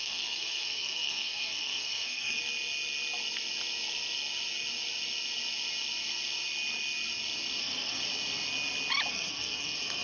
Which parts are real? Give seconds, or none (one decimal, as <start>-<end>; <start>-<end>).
2.4-7.6; 8.0-9.1